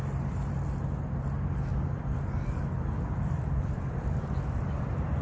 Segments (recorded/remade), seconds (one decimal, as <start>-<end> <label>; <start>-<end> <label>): 0.0-1.7 recorded; 1.7-4.6 remade; 4.6-5.2 recorded